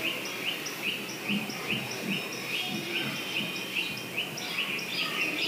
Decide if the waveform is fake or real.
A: real